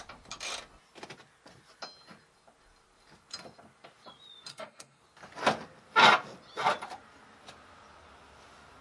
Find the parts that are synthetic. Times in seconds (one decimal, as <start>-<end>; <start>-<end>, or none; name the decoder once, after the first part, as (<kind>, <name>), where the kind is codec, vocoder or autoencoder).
4.5-5.0 (codec, SNAC)